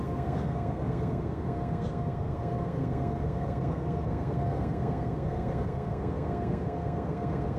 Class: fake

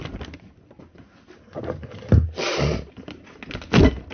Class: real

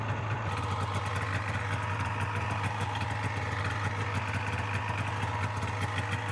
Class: real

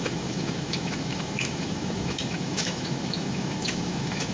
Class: fake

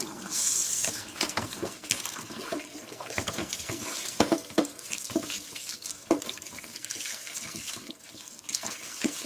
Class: fake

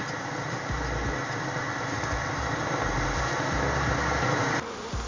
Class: real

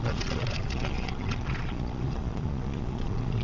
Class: fake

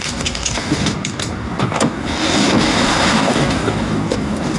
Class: fake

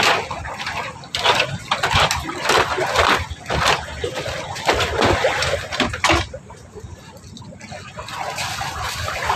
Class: real